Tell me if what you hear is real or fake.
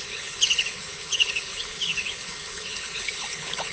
fake